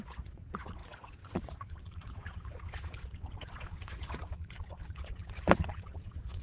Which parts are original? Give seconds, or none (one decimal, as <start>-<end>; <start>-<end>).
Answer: none